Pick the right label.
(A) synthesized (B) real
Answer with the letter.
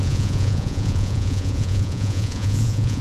A